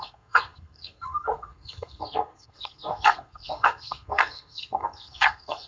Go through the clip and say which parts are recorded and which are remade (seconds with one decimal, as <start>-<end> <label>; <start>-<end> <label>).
0.0-5.7 remade